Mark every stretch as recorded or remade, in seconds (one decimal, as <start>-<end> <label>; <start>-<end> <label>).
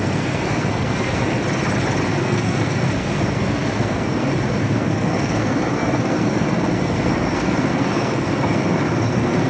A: 0.0-1.4 remade; 1.4-2.2 recorded; 2.2-9.5 remade